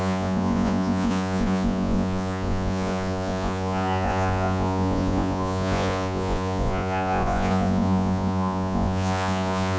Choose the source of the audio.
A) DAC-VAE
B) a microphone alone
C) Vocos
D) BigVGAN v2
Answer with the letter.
C